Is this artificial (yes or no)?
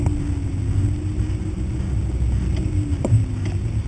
no